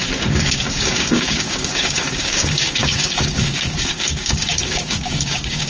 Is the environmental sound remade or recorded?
remade